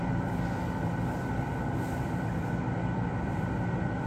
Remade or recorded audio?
remade